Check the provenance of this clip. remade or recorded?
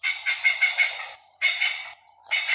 recorded